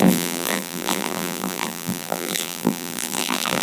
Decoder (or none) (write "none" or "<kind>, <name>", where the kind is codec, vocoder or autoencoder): vocoder, BigVGAN v2